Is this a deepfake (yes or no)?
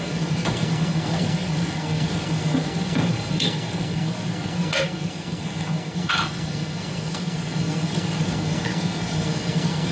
yes